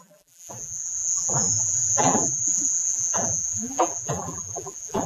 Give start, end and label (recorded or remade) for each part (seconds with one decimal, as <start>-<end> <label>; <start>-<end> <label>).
0.0-5.1 remade